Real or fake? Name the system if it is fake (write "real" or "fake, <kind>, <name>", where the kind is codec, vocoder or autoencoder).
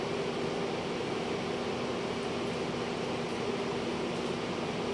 real